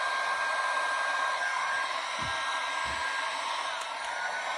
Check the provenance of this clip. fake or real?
real